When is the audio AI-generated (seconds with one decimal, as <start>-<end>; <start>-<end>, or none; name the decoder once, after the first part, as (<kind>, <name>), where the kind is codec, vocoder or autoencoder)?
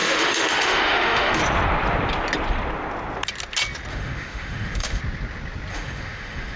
0.0-1.4 (autoencoder, DAC-VAE); 3.9-5.0; 5.7-6.6